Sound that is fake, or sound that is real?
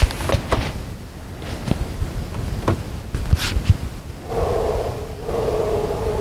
real